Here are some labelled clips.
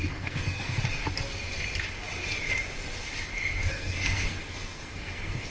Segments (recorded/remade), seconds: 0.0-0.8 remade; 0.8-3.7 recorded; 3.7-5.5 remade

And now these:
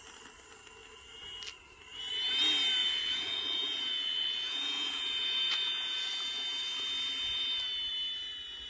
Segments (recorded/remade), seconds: 0.0-2.8 recorded; 2.8-6.1 remade; 6.1-8.7 recorded